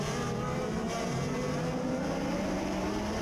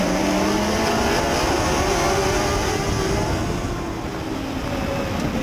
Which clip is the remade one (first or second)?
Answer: first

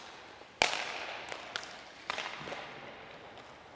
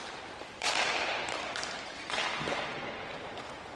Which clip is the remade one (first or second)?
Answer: second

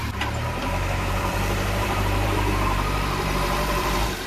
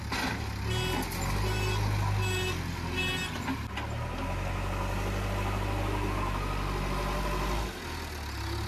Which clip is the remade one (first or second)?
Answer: first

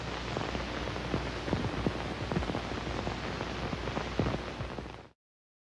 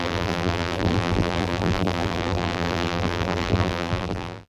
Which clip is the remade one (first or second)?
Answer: second